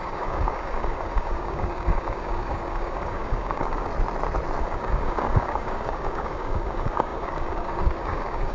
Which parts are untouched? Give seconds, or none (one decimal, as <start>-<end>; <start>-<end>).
3.9-4.6